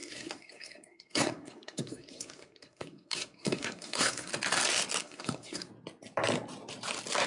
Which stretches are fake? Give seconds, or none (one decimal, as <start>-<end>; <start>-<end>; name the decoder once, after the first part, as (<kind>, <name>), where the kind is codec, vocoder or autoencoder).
0.0-4.3 (codec, SNAC); 5.0-5.7